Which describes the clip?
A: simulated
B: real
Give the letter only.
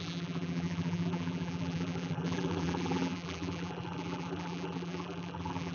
A